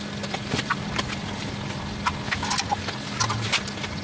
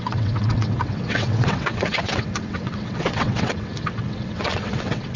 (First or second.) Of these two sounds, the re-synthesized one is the second